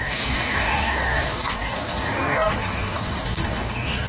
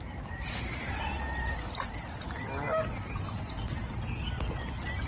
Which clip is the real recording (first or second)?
second